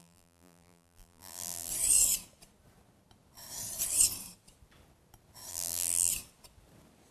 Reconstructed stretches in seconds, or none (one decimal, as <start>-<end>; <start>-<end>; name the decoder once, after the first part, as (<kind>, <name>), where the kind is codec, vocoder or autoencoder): 0.0-1.7 (vocoder, BigVGAN v2); 5.5-6.1